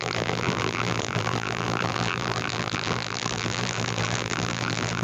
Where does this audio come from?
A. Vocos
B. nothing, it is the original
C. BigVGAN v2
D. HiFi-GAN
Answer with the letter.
C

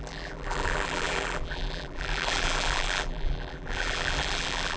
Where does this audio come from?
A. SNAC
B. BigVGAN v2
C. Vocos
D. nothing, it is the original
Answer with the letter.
B